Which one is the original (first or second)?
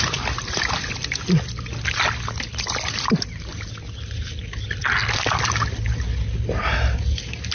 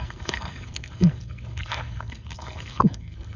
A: first